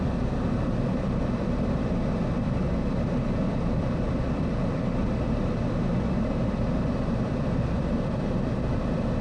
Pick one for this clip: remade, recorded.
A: remade